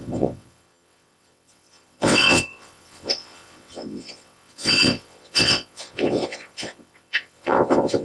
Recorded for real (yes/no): no